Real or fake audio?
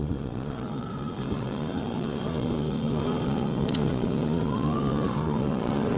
fake